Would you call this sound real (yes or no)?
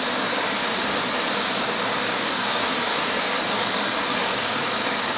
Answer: no